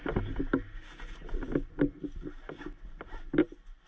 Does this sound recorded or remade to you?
recorded